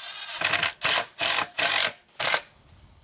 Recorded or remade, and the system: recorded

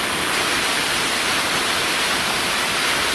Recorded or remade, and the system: recorded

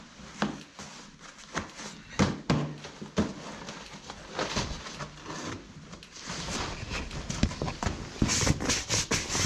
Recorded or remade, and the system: recorded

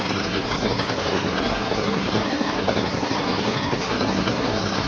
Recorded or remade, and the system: remade, codec, SNAC